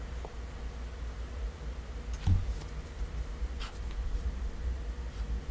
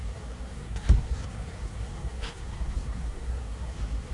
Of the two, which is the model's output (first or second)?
second